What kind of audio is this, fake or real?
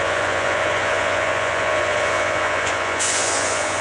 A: fake